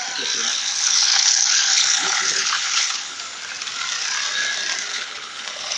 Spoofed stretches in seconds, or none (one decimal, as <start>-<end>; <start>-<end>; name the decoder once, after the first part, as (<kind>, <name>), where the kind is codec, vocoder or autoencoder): 0.5-3.2 (codec, HILCodec); 4.9-5.8